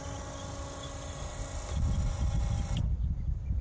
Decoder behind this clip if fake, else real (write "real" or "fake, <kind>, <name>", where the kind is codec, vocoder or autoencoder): real